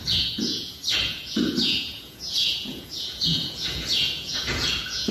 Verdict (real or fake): fake